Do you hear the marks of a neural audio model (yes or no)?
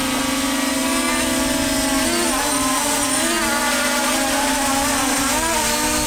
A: no